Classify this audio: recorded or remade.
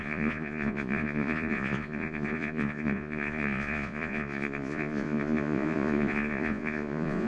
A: remade